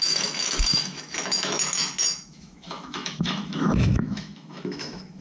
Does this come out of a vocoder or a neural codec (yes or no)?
yes